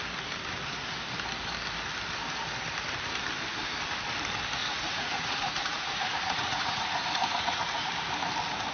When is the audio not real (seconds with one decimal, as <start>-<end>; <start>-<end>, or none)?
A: 4.6-7.9